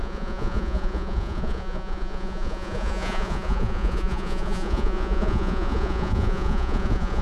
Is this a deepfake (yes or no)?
yes